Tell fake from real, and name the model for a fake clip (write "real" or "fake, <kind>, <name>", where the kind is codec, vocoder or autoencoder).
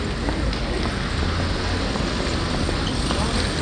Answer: real